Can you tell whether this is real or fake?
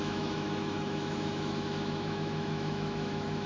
fake